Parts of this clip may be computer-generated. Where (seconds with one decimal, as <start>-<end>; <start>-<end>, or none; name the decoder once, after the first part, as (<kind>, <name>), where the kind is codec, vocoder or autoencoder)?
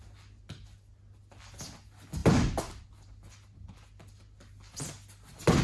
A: none